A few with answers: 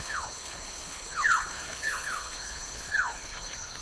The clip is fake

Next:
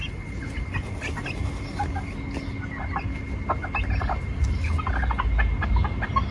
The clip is real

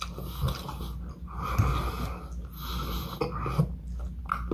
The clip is real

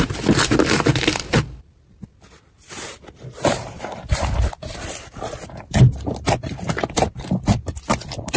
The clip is fake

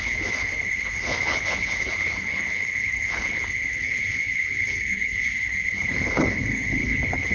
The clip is fake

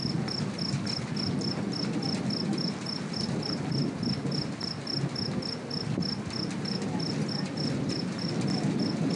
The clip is real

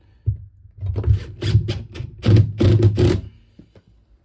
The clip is real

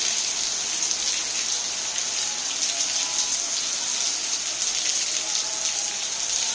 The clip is real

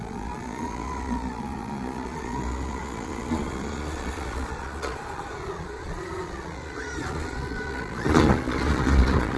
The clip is fake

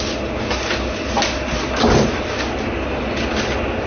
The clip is real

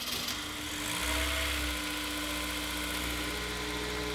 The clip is real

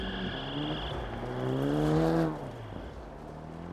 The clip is real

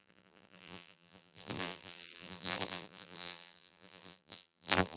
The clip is fake